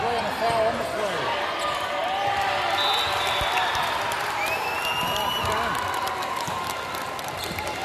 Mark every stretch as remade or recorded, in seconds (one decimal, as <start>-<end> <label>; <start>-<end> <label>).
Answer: 0.0-7.8 recorded